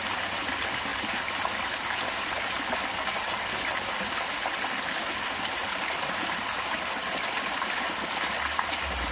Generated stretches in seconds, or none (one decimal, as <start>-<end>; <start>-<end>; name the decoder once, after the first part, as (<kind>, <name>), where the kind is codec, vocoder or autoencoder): none